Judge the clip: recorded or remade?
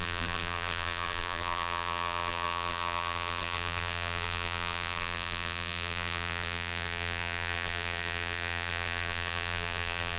remade